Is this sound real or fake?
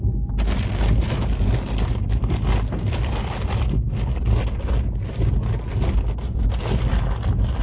real